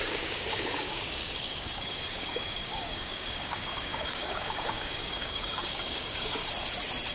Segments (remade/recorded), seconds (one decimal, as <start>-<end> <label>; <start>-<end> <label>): 0.0-6.4 remade; 6.4-7.1 recorded